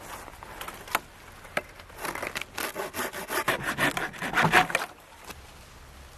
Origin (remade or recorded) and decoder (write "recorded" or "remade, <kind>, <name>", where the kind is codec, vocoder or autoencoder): recorded